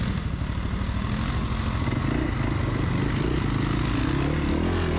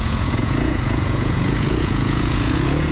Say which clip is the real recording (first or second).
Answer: first